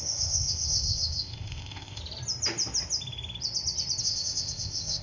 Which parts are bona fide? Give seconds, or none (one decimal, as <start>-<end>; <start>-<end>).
2.0-4.0